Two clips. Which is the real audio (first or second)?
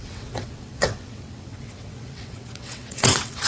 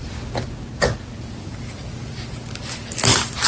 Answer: second